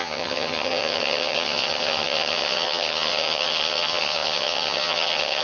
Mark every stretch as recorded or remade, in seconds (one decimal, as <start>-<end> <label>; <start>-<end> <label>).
0.0-5.4 remade